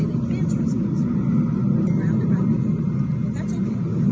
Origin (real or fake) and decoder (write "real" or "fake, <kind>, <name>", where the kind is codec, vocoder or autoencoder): real